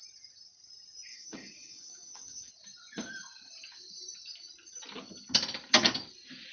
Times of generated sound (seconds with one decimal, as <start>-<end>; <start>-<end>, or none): 1.1-2.5